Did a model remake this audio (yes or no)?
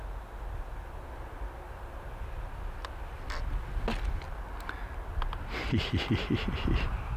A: no